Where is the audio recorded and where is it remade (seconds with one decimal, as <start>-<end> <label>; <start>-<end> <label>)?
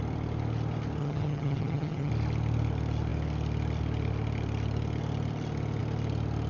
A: 0.0-1.0 recorded; 1.0-2.1 remade; 2.1-6.5 recorded